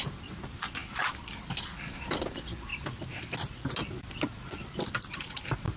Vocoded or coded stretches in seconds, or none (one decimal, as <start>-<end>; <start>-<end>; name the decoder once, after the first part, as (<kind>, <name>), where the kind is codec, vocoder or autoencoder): none